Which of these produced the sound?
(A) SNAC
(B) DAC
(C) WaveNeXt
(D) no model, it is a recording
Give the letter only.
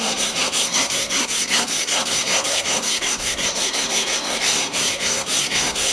A